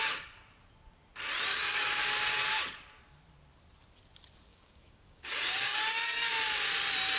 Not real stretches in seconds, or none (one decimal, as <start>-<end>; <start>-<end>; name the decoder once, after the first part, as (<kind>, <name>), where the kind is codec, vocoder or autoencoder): 1.5-2.0 (codec, DAC); 4.5-6.3